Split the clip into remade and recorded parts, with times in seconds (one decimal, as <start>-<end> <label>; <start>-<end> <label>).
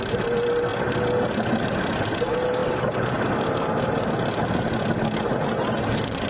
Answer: 0.0-6.3 recorded